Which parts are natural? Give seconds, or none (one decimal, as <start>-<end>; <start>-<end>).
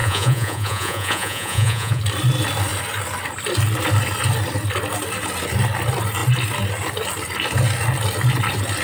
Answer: 2.0-8.8